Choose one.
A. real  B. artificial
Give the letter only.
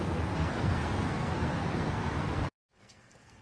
B